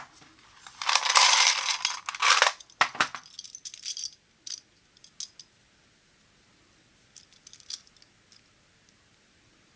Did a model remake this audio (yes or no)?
no